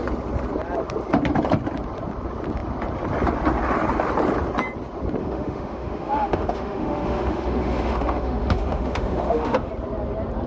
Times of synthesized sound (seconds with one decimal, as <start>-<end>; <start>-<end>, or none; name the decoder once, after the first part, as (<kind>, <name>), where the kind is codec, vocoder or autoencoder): 5.2-9.7 (autoencoder, DAC-VAE)